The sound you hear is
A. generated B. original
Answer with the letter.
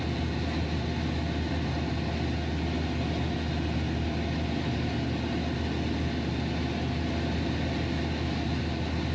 B